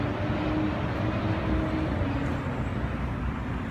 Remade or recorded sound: recorded